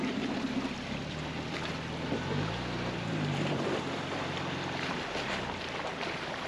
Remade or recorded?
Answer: remade